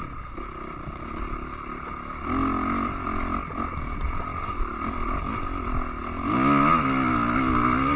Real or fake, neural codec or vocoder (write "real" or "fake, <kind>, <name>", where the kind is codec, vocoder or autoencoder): real